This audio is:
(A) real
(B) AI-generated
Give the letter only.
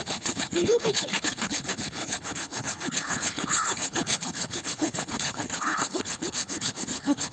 B